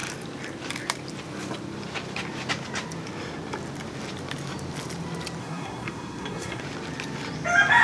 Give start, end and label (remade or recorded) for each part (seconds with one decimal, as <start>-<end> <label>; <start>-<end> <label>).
0.0-5.4 recorded; 5.4-6.6 remade; 6.6-7.8 recorded